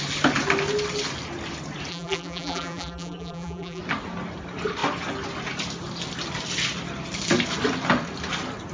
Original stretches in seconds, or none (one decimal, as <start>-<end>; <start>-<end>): 0.0-1.9; 3.8-8.7